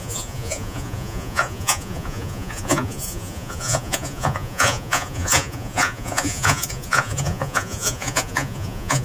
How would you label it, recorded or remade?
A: remade